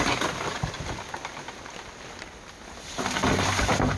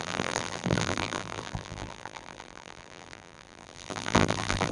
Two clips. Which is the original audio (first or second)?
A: first